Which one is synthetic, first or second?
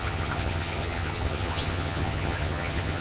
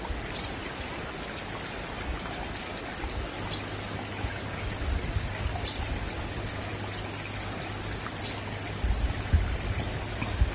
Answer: first